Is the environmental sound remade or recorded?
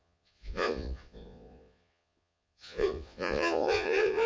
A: remade